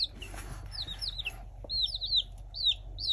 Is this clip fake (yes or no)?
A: no